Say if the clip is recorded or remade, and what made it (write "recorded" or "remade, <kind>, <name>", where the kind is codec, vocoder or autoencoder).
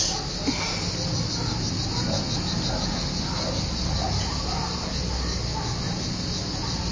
recorded